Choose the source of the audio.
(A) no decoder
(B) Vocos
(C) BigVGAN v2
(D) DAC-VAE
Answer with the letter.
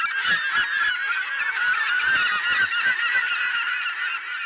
A